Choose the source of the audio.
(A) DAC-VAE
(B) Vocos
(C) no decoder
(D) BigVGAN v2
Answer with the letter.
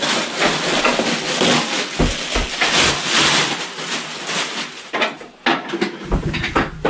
C